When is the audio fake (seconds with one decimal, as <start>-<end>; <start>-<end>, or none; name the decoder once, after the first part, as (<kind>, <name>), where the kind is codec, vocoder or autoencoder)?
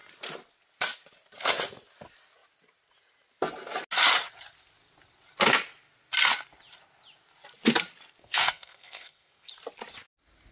8.2-9.5 (codec, SNAC)